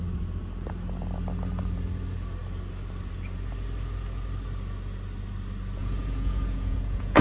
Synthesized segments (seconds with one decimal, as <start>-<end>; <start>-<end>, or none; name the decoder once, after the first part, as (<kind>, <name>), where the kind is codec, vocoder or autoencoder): 5.8-7.2 (vocoder, Vocos)